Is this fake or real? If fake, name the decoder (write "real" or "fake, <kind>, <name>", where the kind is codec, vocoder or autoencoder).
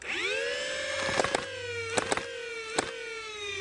real